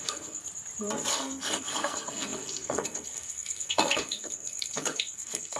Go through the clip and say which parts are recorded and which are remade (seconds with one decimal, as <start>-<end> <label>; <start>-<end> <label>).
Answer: 0.0-0.4 remade; 0.4-1.1 recorded; 1.1-5.6 remade